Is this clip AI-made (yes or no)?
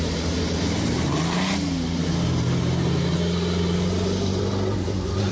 no